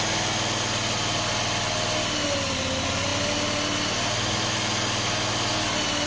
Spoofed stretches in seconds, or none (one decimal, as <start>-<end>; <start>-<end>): none